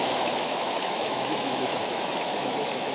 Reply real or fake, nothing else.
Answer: fake